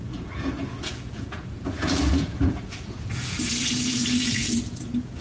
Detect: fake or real fake